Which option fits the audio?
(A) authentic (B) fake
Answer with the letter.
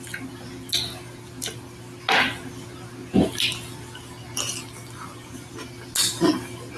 A